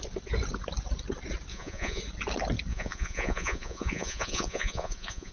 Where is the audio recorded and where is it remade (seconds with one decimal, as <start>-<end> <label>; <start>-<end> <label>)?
0.0-1.5 recorded; 1.5-2.0 remade; 2.0-2.7 recorded; 2.7-5.3 remade